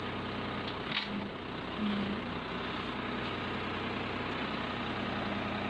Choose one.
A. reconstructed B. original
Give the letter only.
B